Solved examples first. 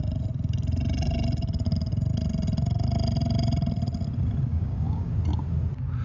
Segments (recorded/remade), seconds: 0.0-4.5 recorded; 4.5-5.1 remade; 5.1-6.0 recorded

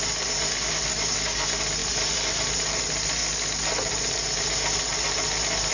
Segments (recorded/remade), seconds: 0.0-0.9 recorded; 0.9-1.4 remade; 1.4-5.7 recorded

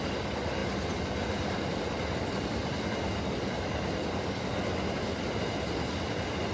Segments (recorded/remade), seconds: 0.0-6.5 recorded